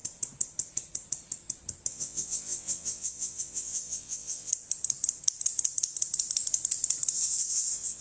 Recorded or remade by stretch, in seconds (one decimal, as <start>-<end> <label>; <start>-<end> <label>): 0.0-1.9 recorded; 1.9-4.5 remade; 4.5-7.1 recorded; 7.1-8.0 remade